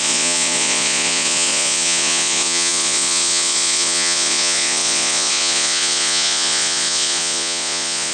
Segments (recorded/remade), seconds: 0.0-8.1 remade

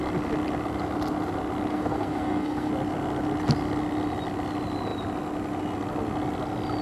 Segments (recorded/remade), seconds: 0.0-1.7 recorded; 1.7-2.7 remade; 2.7-6.8 recorded

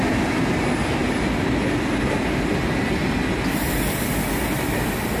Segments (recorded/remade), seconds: 0.0-5.2 recorded

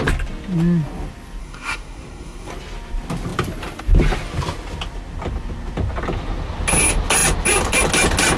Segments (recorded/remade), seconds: 0.0-1.4 recorded; 1.4-2.5 remade; 2.5-8.4 recorded